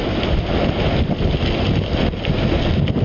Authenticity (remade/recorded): recorded